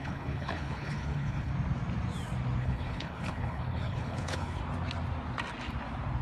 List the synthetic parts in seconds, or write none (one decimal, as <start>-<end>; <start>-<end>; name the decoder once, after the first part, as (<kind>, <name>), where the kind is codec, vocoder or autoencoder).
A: 0.0-1.5 (codec, HILCodec); 2.6-4.6